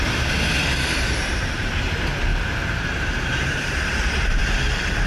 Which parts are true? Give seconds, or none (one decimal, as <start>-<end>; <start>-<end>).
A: 2.3-3.0; 4.4-5.1